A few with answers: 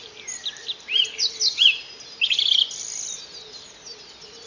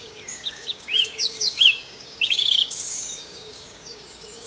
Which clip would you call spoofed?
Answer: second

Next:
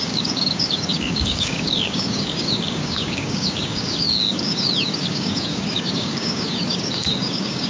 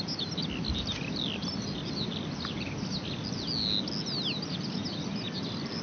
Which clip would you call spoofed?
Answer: first